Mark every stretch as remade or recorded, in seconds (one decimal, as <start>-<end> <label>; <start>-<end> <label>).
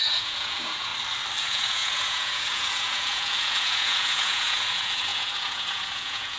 0.0-0.9 remade; 0.9-1.4 recorded; 1.4-6.4 remade